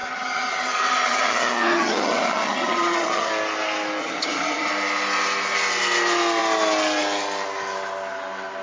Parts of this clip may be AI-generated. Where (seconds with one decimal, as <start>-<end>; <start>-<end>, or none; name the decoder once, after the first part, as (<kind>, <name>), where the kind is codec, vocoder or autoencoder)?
0.0-3.3 (vocoder, HiFi-GAN); 4.0-4.7